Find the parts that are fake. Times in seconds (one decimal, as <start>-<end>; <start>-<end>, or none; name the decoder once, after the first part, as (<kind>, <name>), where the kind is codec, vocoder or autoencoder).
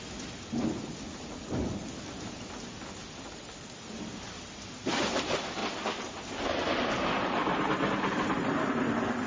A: none